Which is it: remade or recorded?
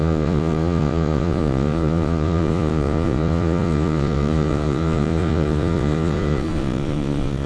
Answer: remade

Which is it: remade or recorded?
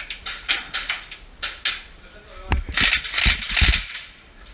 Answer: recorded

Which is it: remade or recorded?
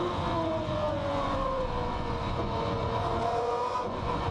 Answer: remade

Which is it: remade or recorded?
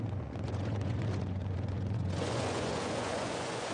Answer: remade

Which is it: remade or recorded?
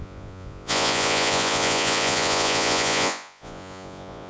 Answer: remade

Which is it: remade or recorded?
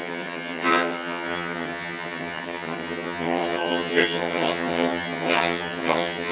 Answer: remade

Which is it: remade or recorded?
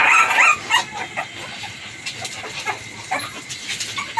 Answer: recorded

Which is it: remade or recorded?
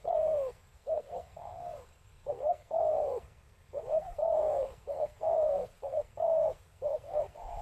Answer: remade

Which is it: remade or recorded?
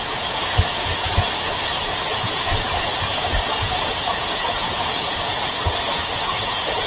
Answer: remade